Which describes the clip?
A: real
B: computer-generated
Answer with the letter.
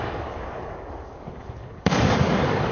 B